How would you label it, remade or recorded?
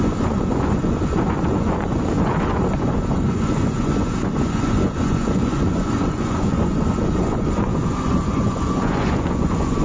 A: remade